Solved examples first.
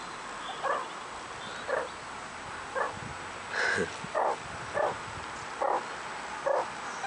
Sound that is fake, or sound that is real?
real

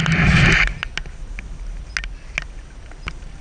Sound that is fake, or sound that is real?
real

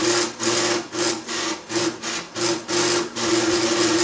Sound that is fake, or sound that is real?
real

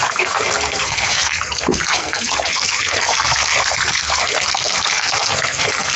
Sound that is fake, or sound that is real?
fake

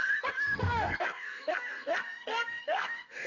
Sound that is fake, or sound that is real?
fake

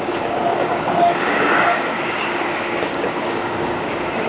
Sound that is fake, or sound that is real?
fake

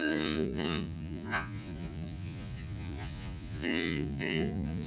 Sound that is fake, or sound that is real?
fake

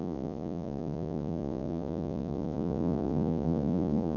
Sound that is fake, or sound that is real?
fake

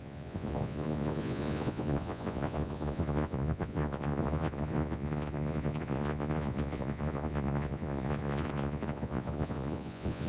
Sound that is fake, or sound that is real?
fake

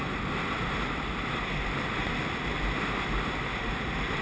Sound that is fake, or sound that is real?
real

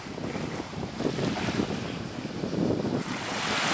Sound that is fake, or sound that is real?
real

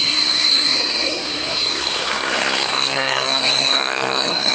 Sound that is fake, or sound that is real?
fake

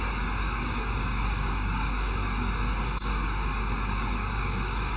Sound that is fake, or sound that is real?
fake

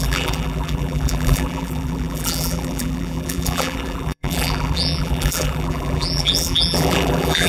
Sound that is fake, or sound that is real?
fake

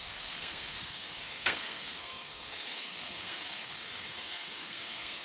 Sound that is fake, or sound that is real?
fake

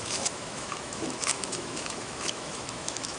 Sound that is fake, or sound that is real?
fake